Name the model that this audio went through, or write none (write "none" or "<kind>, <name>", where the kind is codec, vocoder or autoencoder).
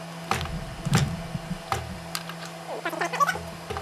none